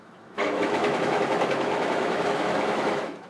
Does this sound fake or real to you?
fake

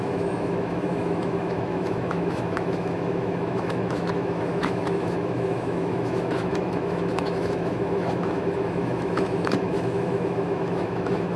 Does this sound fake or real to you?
fake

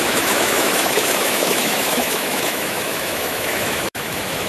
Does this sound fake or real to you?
fake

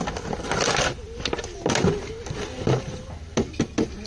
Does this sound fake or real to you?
real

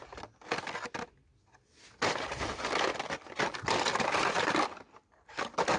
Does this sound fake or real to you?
real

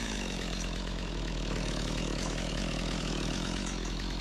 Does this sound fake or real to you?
fake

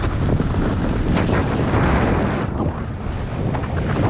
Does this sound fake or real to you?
real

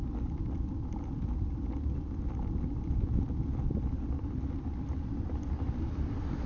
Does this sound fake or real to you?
real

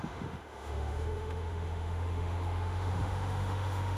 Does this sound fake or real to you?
fake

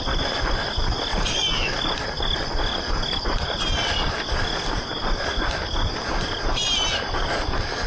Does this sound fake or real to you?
real